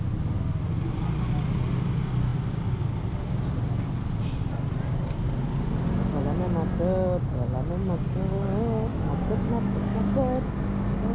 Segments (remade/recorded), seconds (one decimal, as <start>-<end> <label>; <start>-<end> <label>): 0.0-8.9 recorded; 8.9-10.0 remade; 10.0-11.1 recorded